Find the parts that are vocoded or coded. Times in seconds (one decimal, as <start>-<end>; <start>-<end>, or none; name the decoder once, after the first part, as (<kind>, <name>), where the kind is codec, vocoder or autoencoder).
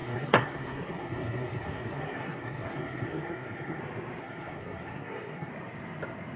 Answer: 0.0-3.8 (codec, SNAC); 4.2-5.5